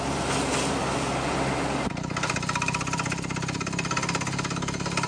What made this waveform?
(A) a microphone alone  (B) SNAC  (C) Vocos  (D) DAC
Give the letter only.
A